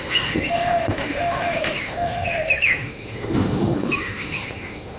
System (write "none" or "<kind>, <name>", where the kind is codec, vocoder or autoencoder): autoencoder, DAC-VAE